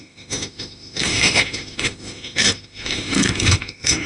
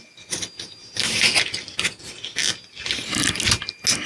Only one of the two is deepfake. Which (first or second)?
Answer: first